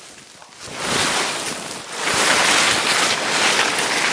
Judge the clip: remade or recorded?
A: recorded